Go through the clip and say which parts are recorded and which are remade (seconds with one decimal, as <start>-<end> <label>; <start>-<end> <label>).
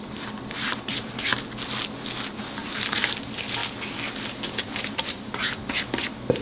0.0-1.3 remade; 1.3-2.4 recorded; 2.4-3.6 remade; 3.6-4.5 recorded; 4.5-5.4 remade; 5.4-6.4 recorded